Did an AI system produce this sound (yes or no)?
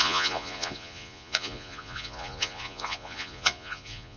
yes